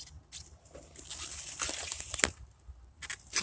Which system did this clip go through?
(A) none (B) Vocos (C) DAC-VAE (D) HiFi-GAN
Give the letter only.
A